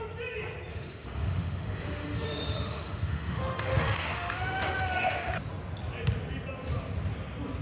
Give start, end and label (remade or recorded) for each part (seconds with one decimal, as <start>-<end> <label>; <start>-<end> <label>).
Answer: 0.0-0.7 recorded; 0.7-5.3 remade; 5.3-7.6 recorded